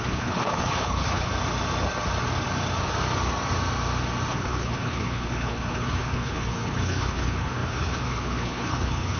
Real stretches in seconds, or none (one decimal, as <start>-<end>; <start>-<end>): 1.3-4.3